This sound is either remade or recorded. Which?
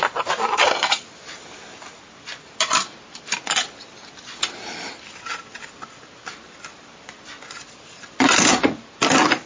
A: recorded